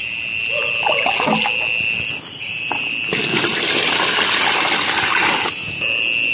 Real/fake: real